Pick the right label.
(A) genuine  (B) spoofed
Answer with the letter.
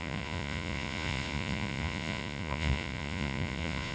B